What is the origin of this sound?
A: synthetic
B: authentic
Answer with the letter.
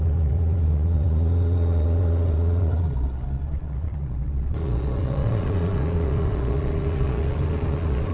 A